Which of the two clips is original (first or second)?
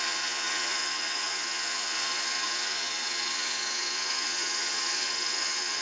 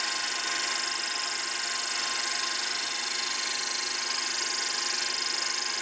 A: second